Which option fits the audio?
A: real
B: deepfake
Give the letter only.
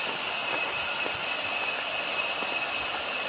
A